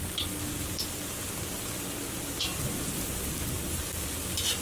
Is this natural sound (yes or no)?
yes